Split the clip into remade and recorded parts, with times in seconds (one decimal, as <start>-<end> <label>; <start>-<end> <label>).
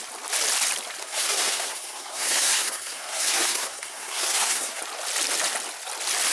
0.0-1.0 recorded; 1.0-4.8 remade; 4.8-6.3 recorded